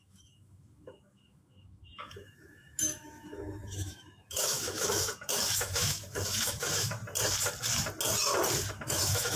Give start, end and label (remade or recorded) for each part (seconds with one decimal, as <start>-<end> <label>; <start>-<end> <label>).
0.0-7.0 remade; 7.0-8.7 recorded; 8.7-9.4 remade